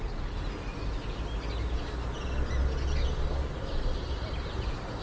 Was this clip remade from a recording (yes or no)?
no